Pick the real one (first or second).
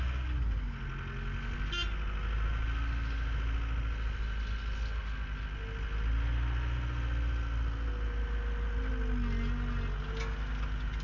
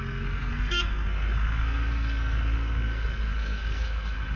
first